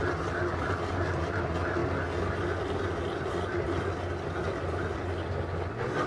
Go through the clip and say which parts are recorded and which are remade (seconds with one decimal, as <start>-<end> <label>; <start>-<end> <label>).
0.0-6.1 recorded